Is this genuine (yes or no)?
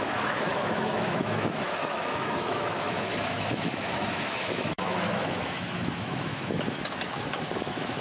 no